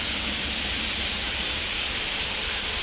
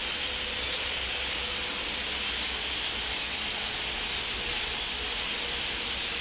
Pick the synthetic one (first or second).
first